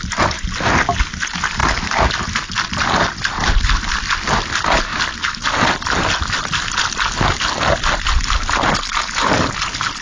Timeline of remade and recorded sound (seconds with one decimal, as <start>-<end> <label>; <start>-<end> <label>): 0.0-10.0 recorded